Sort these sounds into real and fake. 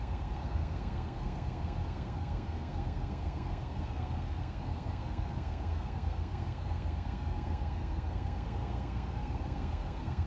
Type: fake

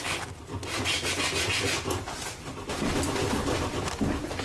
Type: real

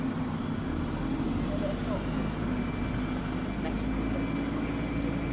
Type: real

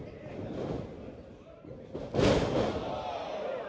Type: real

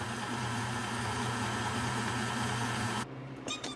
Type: fake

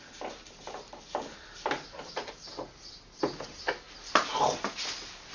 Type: real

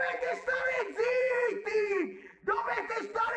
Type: fake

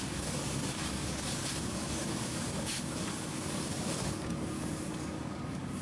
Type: fake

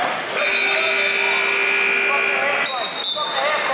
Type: real